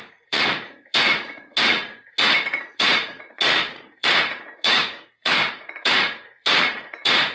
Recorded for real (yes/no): no